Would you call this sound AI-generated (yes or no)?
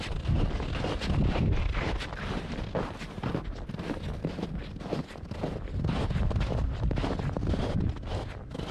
no